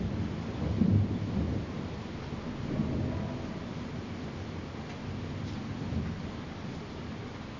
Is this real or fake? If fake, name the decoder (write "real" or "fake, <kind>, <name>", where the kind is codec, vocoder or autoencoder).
real